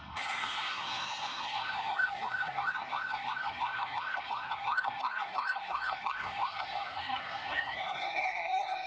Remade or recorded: remade